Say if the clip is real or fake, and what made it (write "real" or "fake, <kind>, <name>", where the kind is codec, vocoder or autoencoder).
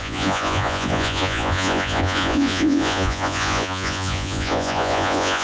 fake, vocoder, Vocos